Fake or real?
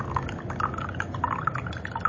real